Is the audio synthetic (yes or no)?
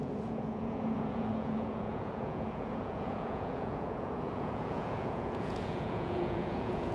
yes